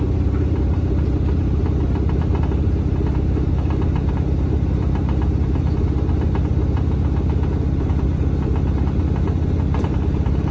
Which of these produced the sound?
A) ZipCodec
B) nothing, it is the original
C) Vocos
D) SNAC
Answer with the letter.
B